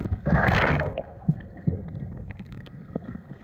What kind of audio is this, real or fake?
fake